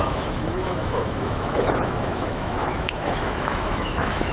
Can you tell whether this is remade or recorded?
remade